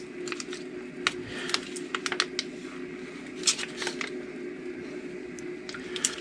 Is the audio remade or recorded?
recorded